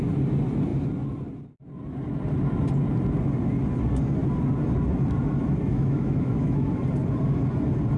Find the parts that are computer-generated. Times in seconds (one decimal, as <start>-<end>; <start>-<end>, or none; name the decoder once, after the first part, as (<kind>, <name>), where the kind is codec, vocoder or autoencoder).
5.7-6.8 (autoencoder, DAC-VAE)